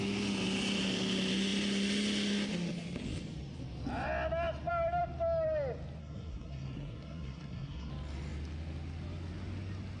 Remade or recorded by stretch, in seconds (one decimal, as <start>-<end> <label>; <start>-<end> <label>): 0.0-6.0 recorded; 6.0-7.9 remade; 7.9-10.0 recorded